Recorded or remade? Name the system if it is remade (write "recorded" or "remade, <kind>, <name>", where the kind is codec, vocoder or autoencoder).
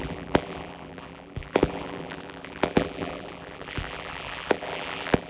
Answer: remade, vocoder, BigVGAN v2